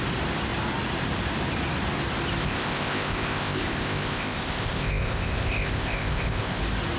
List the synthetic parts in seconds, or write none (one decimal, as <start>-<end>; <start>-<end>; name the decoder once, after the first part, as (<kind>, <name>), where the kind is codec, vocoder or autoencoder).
2.4-6.6 (codec, ZipCodec)